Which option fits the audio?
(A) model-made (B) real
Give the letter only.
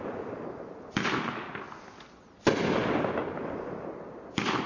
B